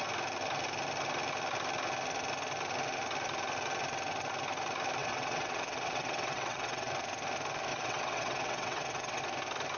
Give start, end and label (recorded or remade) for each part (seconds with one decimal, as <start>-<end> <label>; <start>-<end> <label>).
0.0-5.0 recorded; 5.0-6.9 remade; 6.9-7.7 recorded; 7.7-9.2 remade; 9.2-9.8 recorded

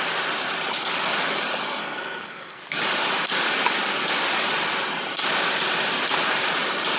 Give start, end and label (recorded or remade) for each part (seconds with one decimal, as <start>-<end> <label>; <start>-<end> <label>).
0.0-1.8 recorded; 1.8-2.6 remade; 2.6-7.0 recorded

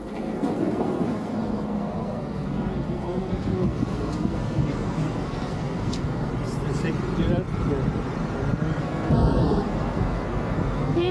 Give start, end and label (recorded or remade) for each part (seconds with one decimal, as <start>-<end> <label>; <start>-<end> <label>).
0.0-6.3 remade; 6.3-8.8 recorded; 8.8-11.1 remade

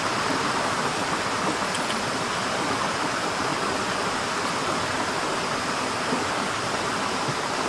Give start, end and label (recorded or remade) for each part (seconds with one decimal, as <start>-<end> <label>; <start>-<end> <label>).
0.0-7.7 recorded

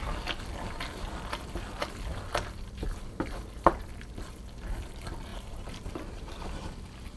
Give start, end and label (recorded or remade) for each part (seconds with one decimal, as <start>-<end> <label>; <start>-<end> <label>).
0.0-2.3 recorded; 2.3-3.8 remade; 3.8-5.3 recorded; 5.3-6.8 remade; 6.8-7.2 recorded

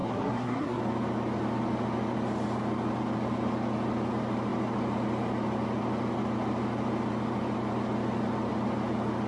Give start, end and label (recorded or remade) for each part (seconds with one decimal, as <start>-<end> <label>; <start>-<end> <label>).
0.0-0.8 remade; 0.8-9.3 recorded

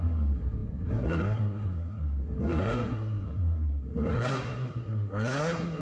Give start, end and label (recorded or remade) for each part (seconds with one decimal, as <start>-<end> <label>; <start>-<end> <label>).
0.0-5.8 remade

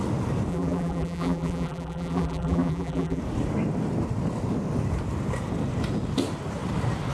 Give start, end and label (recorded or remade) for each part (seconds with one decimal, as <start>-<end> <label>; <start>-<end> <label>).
0.0-0.5 recorded; 0.5-3.2 remade; 3.2-7.1 recorded